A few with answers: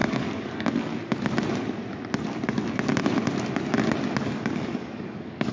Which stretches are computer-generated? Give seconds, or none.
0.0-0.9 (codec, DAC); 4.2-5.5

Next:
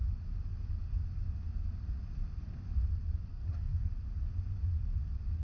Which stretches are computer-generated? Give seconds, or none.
3.3-3.9 (codec, SNAC)

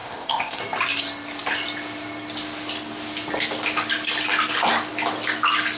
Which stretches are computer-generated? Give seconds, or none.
0.0-0.6 (codec, ZipCodec)

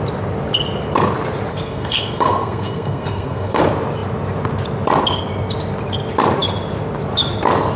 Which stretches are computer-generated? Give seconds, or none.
1.5-3.6 (codec, SNAC)

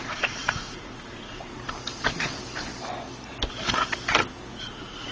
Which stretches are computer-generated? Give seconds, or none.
0.0-1.5 (vocoder, Vocos); 4.6-5.1

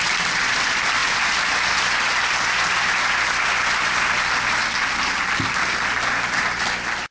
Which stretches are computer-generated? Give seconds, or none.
none

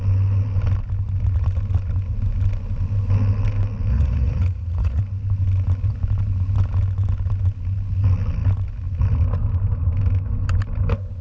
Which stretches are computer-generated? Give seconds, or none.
3.9-5.0 (vocoder, Vocos)

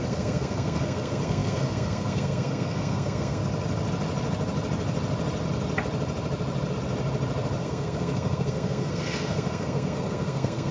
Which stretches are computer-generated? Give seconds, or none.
0.0-3.4 (codec, SNAC); 7.6-10.7